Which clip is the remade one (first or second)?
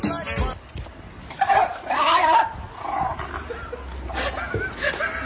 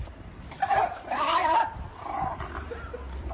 second